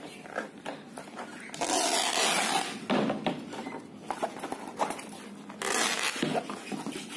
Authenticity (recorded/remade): recorded